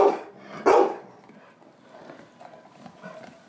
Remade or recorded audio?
recorded